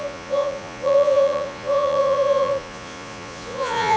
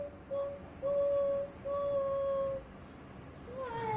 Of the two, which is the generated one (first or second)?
first